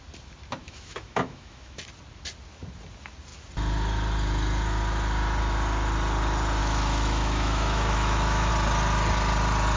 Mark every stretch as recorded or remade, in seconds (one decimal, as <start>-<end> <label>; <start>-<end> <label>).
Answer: 0.0-0.6 recorded; 0.6-1.8 remade; 1.8-6.6 recorded; 6.6-8.5 remade; 8.5-9.8 recorded